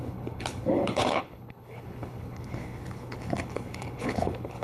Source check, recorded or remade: remade